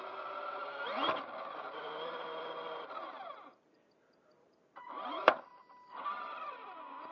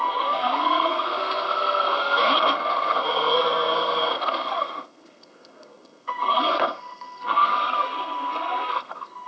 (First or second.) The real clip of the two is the first